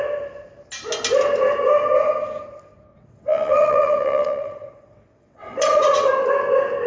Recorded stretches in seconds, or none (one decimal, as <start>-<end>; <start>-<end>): 0.0-2.9; 6.1-6.9